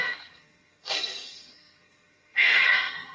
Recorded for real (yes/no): no